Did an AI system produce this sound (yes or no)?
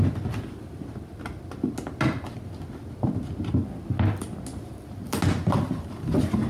no